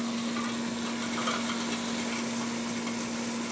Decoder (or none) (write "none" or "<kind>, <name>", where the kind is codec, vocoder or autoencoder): none